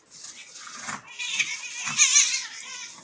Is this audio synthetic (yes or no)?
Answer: no